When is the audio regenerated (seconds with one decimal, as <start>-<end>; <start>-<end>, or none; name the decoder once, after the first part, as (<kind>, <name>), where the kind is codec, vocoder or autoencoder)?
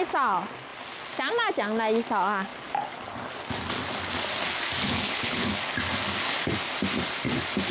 4.8-5.5 (codec, HILCodec)